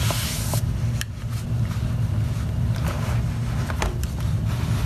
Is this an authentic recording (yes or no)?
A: yes